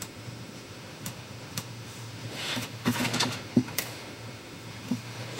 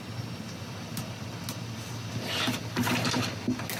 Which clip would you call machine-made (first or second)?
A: first